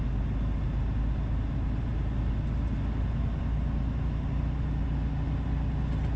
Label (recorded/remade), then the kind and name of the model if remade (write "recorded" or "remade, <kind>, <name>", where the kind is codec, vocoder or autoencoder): recorded